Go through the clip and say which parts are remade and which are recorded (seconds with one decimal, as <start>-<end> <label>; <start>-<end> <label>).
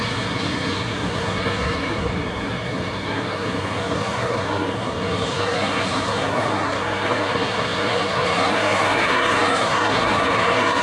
0.0-10.8 remade